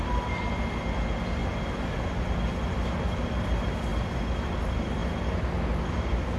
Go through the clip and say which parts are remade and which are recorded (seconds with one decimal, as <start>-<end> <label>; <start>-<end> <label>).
0.0-1.4 remade; 1.4-2.9 recorded; 2.9-3.9 remade; 3.9-4.6 recorded; 4.6-6.4 remade